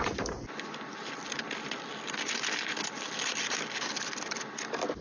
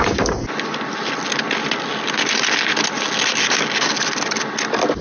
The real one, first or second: second